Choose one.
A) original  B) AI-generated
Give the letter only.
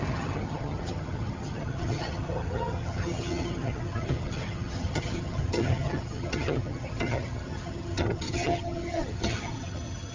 B